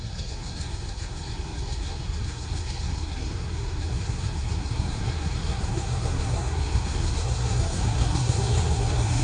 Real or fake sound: fake